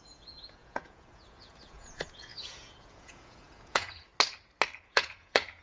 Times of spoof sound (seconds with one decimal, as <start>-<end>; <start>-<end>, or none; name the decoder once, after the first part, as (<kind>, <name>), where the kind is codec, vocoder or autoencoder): 0.0-4.1 (vocoder, Vocos); 4.8-5.6